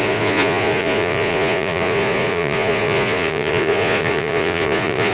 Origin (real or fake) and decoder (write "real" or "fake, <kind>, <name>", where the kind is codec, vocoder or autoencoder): fake, vocoder, Vocos